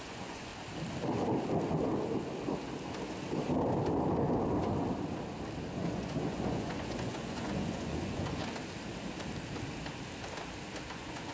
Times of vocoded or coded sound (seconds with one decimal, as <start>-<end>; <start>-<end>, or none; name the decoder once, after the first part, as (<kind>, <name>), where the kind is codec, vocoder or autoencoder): 0.0-0.5 (vocoder, Vocos); 5.7-8.4; 10.9-11.3